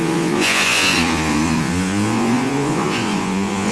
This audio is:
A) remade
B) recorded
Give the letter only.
A